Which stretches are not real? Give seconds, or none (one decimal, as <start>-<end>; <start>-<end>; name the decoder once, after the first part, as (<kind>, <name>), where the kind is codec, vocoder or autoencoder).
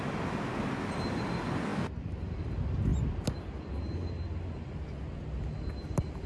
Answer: none